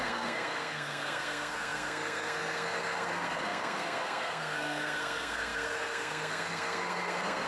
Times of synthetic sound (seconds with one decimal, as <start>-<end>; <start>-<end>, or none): 0.0-7.5